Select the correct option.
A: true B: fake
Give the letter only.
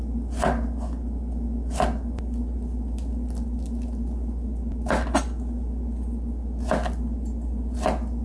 A